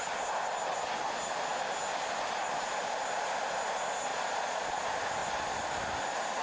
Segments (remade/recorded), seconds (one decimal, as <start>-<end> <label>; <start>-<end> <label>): 0.0-4.1 recorded; 4.1-4.8 remade; 4.8-6.4 recorded